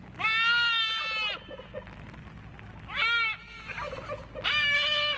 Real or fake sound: real